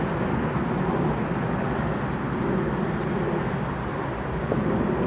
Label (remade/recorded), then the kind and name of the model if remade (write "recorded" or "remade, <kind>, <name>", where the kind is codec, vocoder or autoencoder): recorded